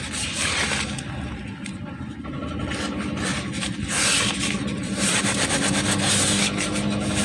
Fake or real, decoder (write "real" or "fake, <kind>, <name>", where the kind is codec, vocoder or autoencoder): real